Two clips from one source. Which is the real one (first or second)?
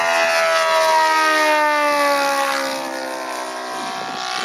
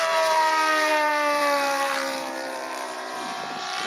first